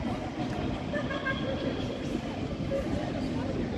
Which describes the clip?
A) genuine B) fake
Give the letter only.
A